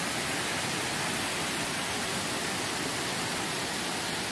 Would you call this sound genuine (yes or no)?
yes